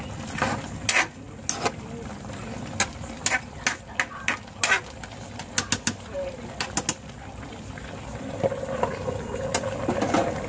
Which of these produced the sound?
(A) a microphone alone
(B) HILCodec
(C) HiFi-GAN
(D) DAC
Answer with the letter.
A